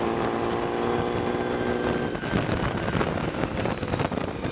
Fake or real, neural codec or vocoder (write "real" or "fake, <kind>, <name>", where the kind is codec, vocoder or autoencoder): real